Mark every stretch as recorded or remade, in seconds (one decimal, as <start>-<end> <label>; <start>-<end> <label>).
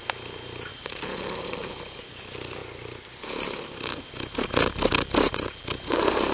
0.0-0.7 recorded; 0.7-1.7 remade; 1.7-6.3 recorded